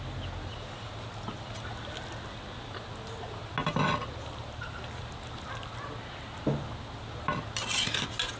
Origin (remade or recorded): recorded